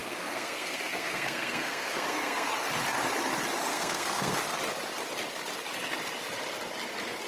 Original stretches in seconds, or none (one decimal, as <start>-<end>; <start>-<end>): 2.5-3.7; 4.4-7.3